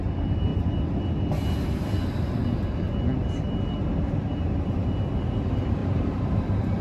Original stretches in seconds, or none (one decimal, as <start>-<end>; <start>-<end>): 0.0-5.8